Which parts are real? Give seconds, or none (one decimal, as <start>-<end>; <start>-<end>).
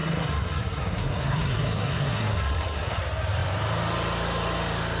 3.0-5.0